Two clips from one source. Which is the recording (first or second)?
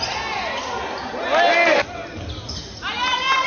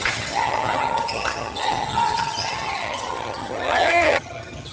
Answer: first